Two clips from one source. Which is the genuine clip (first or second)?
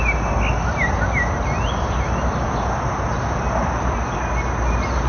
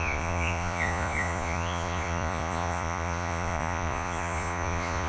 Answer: first